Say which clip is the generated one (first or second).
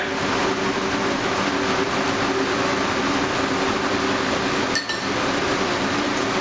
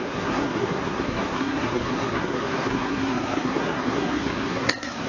second